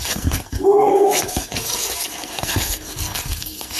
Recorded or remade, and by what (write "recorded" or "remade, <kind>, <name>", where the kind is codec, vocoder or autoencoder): remade, codec, SNAC